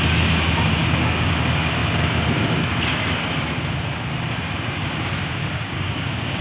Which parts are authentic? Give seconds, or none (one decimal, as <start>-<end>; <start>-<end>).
0.0-0.8; 1.3-5.5